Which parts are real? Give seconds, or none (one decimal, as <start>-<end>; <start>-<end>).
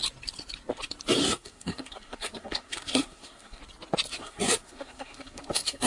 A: 0.0-1.2; 3.6-4.2